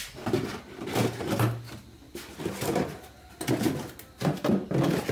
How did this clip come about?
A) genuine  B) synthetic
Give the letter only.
A